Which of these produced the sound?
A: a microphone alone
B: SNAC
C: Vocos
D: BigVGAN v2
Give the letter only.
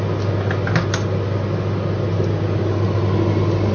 A